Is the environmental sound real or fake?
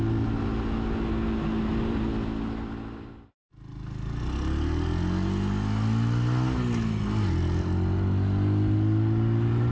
real